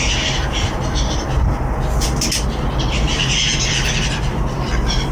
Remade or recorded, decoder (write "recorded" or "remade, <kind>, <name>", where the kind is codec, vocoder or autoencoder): recorded